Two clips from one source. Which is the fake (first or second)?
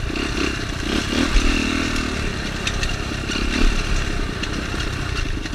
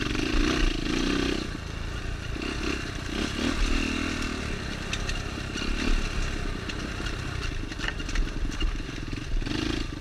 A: first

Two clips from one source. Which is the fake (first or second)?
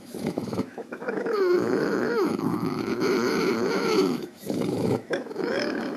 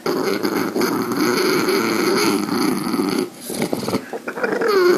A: first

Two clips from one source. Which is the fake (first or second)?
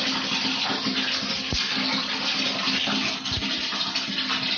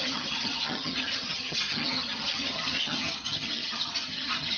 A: second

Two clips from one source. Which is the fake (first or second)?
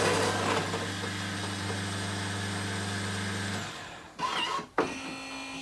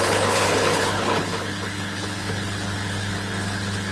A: second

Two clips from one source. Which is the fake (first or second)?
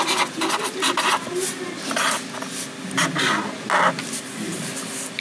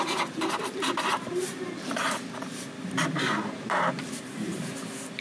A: second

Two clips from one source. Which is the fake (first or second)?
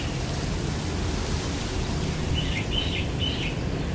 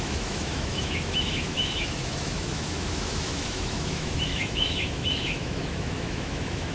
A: second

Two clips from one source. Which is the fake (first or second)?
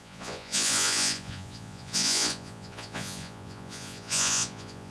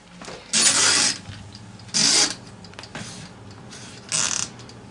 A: first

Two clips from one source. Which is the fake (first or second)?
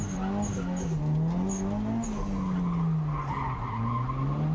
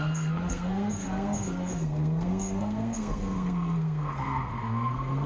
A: second